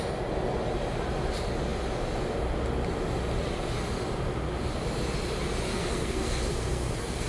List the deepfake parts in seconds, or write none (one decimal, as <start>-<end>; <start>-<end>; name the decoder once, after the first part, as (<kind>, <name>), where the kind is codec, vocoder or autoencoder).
5.7-7.3 (codec, SNAC)

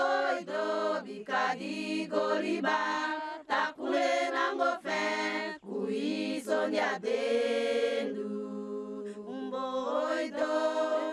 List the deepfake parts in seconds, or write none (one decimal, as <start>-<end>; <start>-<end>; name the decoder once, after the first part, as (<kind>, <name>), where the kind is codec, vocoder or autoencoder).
none